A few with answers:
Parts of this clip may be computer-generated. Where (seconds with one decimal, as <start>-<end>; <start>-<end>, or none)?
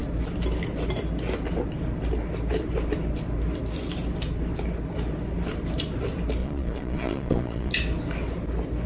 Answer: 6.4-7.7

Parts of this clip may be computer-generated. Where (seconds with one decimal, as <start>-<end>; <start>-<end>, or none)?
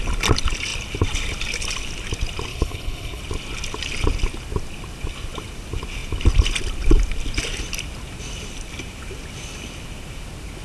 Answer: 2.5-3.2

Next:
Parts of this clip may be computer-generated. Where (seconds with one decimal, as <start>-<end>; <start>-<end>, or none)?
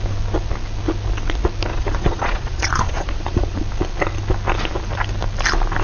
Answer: 1.7-3.6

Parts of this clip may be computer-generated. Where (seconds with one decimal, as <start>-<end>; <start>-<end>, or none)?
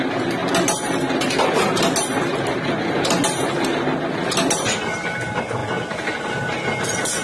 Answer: none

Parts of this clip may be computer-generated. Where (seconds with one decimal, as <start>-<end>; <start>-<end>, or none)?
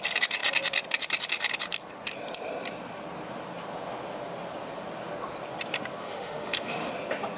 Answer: 6.0-6.9